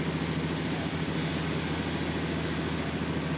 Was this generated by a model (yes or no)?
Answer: no